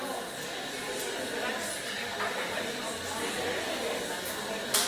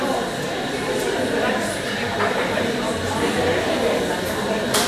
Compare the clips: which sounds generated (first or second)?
second